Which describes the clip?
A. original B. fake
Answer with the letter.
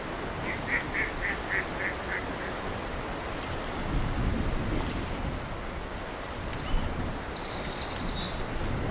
A